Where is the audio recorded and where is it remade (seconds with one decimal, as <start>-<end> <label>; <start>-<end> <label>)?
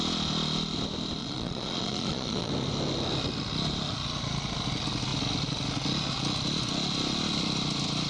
0.0-1.2 recorded; 1.2-2.5 remade; 2.5-8.1 recorded